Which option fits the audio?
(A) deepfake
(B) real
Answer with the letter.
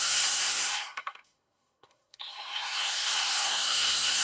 A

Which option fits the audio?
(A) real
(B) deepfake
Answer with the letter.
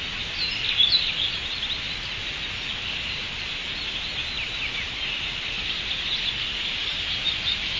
A